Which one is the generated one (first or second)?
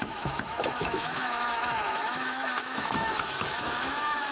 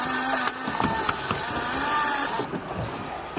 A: first